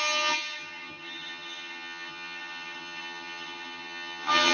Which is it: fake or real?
fake